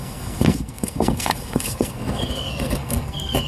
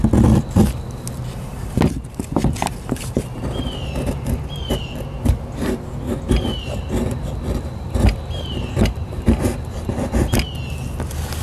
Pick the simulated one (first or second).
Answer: first